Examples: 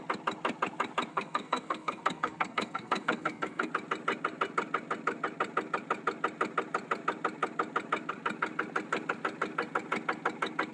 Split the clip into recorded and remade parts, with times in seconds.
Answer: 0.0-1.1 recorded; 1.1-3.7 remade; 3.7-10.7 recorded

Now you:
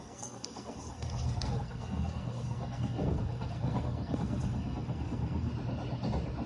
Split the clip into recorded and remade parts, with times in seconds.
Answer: 0.0-5.5 remade; 5.5-6.5 recorded

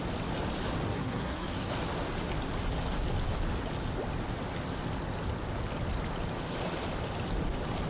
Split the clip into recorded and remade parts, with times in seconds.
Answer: 0.0-0.9 recorded; 0.9-1.7 remade; 1.7-7.9 recorded

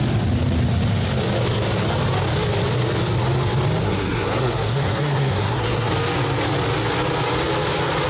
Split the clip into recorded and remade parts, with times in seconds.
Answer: 0.0-3.8 recorded; 3.8-5.9 remade; 5.9-8.1 recorded

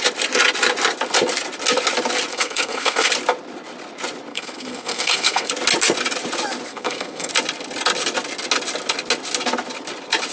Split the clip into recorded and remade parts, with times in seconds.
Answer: 0.0-2.3 recorded; 2.3-3.1 remade; 3.1-4.3 recorded; 4.3-5.5 remade; 5.5-6.7 recorded; 6.7-7.3 remade; 7.3-10.3 recorded

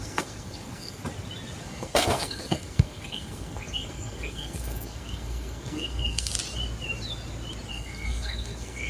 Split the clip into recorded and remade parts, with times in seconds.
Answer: 0.0-1.0 remade; 1.0-1.6 recorded; 1.6-6.3 remade; 6.3-7.7 recorded; 7.7-8.9 remade